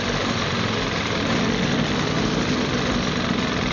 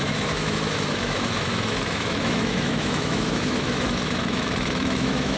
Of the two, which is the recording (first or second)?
first